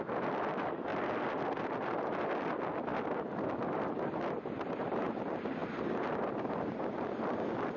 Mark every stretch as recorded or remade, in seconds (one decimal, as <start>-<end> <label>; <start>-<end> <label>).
0.0-7.8 recorded